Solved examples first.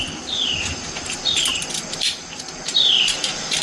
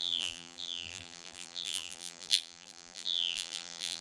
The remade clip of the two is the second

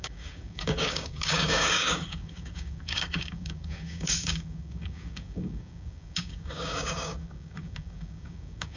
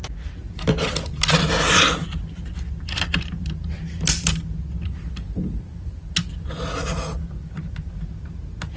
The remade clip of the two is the first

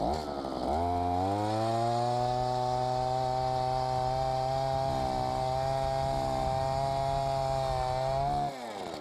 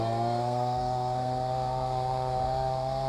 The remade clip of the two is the second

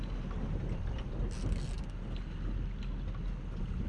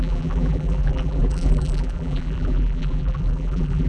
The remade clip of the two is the second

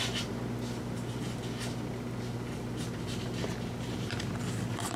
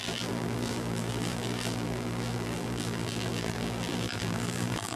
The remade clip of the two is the second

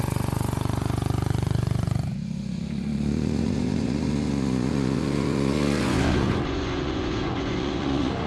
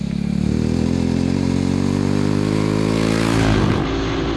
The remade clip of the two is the first